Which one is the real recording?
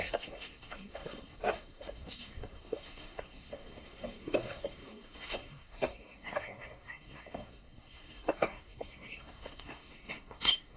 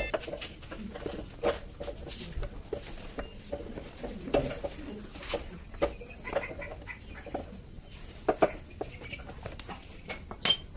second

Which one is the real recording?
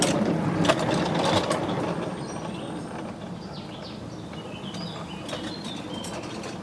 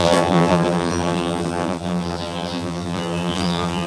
first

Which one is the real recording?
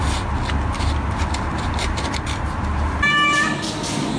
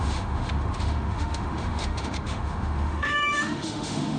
first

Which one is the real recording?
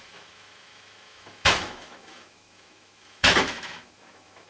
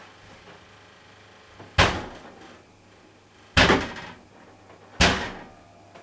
second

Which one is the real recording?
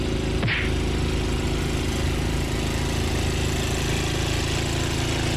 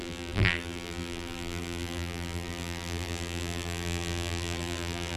first